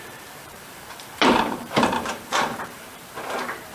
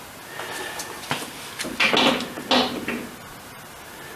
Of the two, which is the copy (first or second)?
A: first